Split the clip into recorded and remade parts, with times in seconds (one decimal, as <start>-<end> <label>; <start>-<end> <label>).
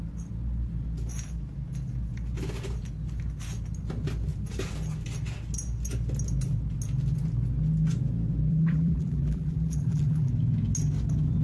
0.0-8.5 recorded; 8.5-10.3 remade; 10.3-11.4 recorded